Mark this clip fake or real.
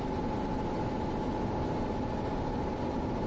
real